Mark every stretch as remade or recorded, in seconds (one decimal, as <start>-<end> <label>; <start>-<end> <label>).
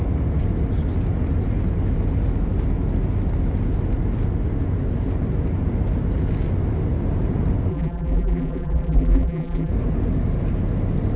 0.0-7.7 recorded; 7.7-9.7 remade; 9.7-11.2 recorded